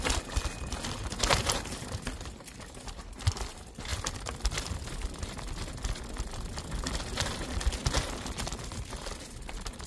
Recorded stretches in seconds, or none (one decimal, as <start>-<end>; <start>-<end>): 0.0-9.9